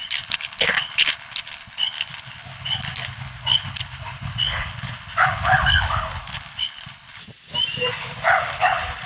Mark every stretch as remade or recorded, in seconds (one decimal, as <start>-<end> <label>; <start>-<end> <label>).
0.0-7.2 remade; 7.2-7.9 recorded; 7.9-9.1 remade

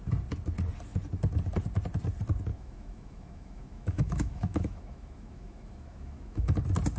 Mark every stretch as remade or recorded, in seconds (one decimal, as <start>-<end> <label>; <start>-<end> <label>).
0.0-2.5 recorded; 2.5-6.6 remade; 6.6-7.0 recorded

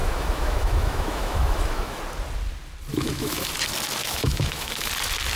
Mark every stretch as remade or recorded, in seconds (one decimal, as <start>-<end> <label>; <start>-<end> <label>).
0.0-2.0 remade; 2.0-2.9 recorded; 2.9-3.5 remade; 3.5-4.0 recorded; 4.0-4.9 remade; 4.9-5.4 recorded

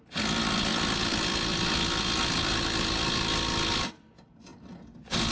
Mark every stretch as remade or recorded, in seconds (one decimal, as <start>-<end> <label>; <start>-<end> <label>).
0.0-5.3 recorded

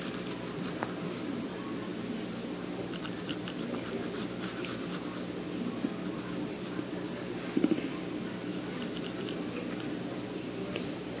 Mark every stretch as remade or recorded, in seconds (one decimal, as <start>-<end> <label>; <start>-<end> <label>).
0.0-11.2 recorded

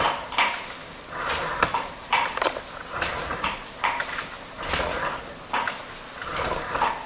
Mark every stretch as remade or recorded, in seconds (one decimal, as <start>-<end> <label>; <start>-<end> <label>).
0.0-0.9 recorded; 0.9-2.6 remade; 2.6-3.3 recorded; 3.3-4.7 remade; 4.7-5.8 recorded; 5.8-6.3 remade; 6.3-7.1 recorded

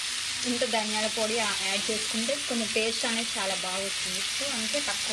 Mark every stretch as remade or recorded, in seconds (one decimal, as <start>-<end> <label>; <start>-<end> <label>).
0.0-5.1 recorded

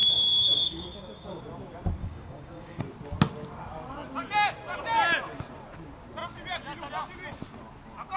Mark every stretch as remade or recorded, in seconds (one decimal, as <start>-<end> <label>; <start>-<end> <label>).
0.0-1.4 remade; 1.4-2.0 recorded; 2.0-2.8 remade; 2.8-8.2 recorded